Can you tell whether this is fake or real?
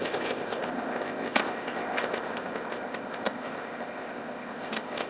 fake